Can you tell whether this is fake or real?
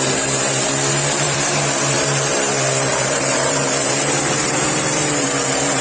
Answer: fake